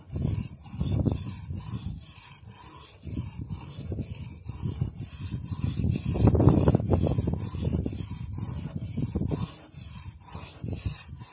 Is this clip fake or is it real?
real